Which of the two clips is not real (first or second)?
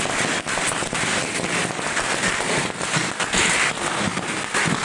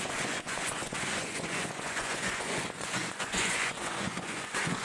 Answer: second